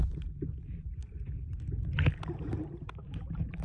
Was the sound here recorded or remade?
recorded